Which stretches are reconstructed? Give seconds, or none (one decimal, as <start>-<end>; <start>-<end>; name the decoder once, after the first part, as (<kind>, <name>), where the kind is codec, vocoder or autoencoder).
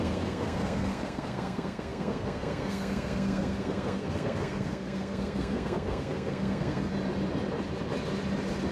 0.0-6.9 (codec, SNAC)